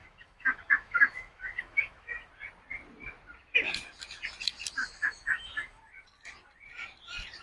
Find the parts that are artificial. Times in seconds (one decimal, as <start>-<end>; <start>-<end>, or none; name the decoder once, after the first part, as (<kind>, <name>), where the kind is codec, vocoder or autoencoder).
0.0-2.3 (autoencoder, DAC-VAE); 4.8-5.8